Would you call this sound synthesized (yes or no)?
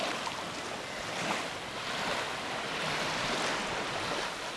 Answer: no